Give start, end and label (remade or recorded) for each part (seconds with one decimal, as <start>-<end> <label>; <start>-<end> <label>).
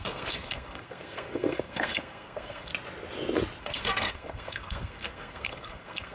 0.0-2.7 remade; 2.7-3.6 recorded; 3.6-6.1 remade